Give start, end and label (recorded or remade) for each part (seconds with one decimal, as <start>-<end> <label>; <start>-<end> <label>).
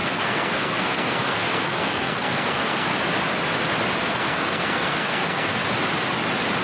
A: 0.0-2.9 remade; 2.9-4.0 recorded; 4.0-5.6 remade; 5.6-6.6 recorded